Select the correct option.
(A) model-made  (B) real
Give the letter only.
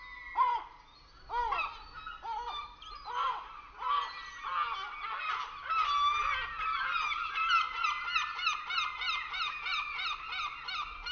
B